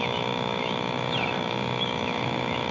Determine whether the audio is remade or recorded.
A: remade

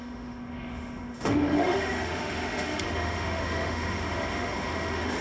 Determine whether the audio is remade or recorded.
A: remade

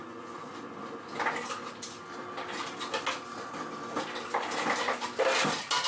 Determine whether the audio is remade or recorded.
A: recorded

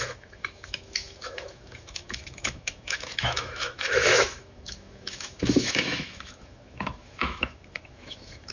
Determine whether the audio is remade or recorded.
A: remade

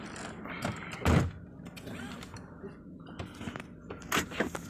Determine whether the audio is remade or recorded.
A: recorded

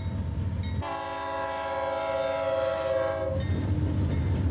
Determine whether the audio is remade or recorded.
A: recorded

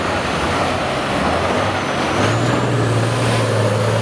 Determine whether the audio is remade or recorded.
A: recorded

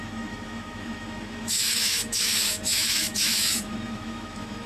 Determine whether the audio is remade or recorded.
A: remade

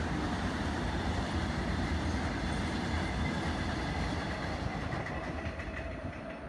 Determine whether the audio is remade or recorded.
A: recorded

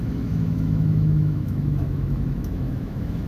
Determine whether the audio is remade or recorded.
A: remade